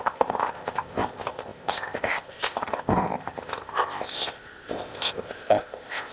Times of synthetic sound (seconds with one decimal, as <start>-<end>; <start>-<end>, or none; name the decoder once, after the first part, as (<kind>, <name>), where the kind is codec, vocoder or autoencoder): 0.0-6.1 (codec, ZipCodec)